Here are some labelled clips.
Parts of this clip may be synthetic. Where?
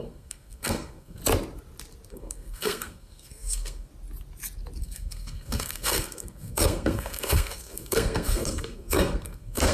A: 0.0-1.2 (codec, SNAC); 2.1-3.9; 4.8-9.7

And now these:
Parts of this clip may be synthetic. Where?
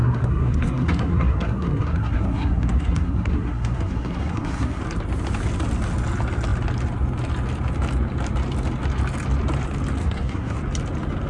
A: 0.0-4.8 (codec, SNAC); 10.0-10.6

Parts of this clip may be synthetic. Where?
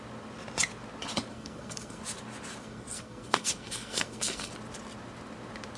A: 1.3-2.0 (codec, SNAC); 2.6-4.5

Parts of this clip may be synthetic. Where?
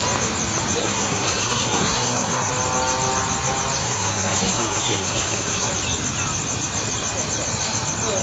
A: 0.8-2.5 (codec, SNAC); 3.8-5.7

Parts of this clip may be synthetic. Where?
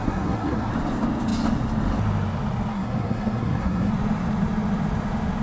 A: 0.0-0.7 (codec, SNAC); 2.7-3.9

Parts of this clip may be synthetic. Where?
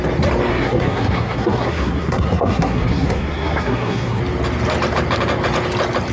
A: 0.5-4.2 (codec, SNAC)